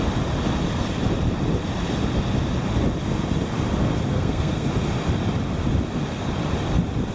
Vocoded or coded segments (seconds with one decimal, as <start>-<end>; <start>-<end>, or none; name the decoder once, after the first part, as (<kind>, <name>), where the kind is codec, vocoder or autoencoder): 4.1-4.7 (codec, SNAC)